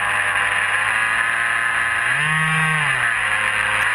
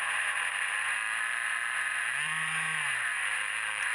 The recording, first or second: first